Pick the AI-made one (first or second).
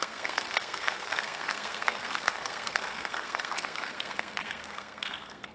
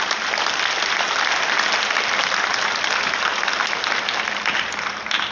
first